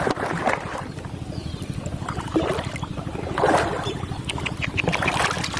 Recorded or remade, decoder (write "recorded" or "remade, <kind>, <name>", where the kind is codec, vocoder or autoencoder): remade, vocoder, BigVGAN v2